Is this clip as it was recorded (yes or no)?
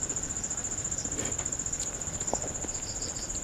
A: yes